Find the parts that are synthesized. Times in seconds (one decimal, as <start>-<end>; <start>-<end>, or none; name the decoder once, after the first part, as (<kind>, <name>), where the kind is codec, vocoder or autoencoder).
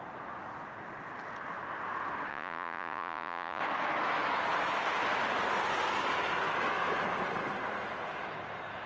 2.3-3.6 (vocoder, Vocos)